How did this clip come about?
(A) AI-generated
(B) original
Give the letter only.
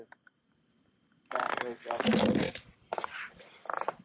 B